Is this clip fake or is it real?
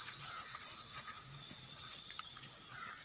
fake